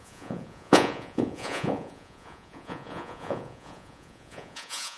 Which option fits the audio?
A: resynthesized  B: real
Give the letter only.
A